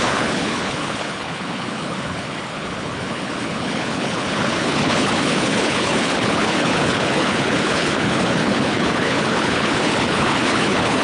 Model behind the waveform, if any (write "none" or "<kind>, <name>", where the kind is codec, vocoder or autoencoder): codec, HILCodec